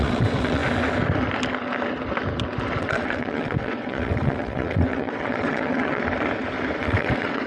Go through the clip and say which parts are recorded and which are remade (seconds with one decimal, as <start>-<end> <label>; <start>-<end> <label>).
0.0-0.6 remade; 0.6-2.8 recorded; 2.8-6.0 remade; 6.0-6.8 recorded; 6.8-7.5 remade